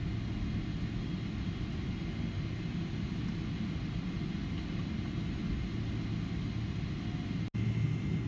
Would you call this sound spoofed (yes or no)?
no